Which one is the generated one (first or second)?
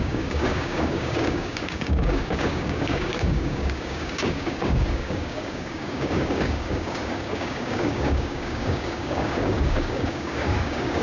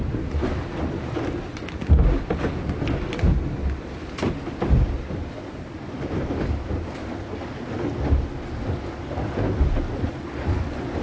first